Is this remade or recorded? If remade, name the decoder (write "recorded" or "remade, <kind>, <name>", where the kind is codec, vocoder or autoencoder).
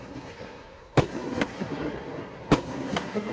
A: remade, codec, SNAC